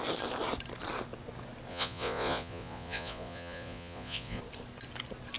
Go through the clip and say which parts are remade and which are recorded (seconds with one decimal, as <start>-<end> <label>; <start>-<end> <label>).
0.0-1.7 recorded; 1.7-4.4 remade; 4.4-5.4 recorded